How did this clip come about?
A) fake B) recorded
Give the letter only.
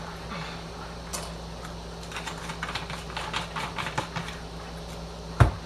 B